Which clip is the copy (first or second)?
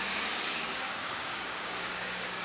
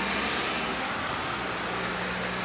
first